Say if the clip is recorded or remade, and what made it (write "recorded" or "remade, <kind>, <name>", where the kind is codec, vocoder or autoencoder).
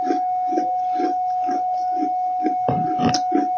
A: recorded